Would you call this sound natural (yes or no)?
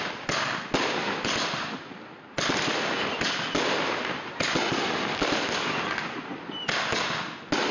yes